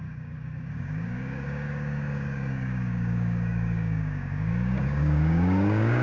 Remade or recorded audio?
remade